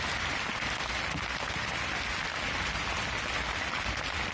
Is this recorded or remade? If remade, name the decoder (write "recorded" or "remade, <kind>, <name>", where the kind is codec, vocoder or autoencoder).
recorded